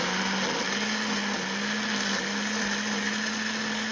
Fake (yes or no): no